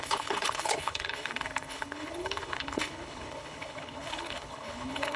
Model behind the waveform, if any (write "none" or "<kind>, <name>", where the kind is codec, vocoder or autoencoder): codec, HILCodec